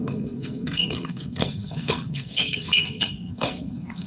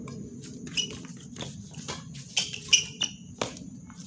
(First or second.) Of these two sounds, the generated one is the first